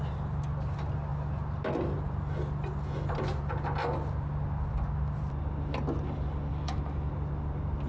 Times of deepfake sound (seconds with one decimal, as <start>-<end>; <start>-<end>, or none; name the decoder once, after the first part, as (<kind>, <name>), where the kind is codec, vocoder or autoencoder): 6.5-7.1 (autoencoder, DAC-VAE)